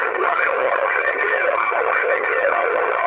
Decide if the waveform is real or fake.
fake